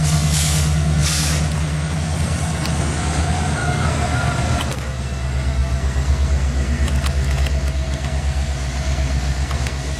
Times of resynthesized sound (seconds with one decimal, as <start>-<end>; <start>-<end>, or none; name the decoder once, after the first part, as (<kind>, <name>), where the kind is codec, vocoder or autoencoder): 0.0-10.0 (codec, SNAC)